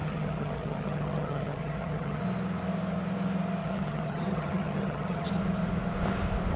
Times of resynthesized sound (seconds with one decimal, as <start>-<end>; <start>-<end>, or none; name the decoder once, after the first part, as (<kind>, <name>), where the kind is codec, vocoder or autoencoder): 0.0-2.2 (vocoder, HiFi-GAN); 3.6-5.3